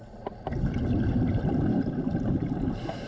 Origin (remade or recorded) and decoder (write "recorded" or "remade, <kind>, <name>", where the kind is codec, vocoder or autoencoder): recorded